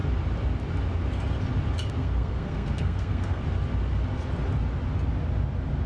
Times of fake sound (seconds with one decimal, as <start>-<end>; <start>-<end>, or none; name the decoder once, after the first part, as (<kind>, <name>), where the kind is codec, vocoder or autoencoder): 2.0-3.4 (codec, SNAC)